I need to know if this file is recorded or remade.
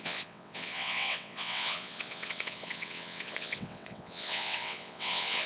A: remade